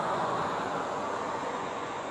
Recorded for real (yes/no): no